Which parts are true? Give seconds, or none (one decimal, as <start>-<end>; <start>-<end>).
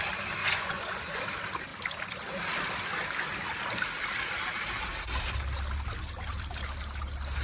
0.0-0.4; 1.2-7.4